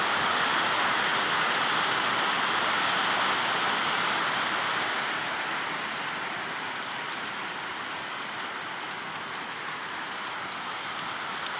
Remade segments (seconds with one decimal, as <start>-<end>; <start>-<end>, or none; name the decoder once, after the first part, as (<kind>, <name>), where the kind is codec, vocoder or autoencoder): none